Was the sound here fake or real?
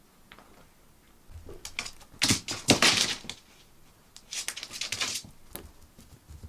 real